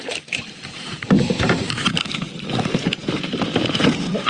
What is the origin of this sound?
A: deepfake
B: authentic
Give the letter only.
A